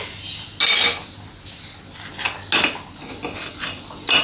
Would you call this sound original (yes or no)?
yes